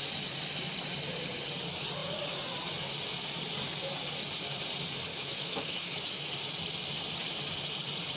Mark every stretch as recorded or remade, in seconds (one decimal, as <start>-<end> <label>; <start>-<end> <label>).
0.0-5.1 recorded; 5.1-6.3 remade; 6.3-8.2 recorded